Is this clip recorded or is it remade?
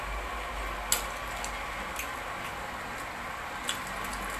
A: recorded